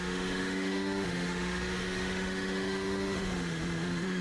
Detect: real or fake fake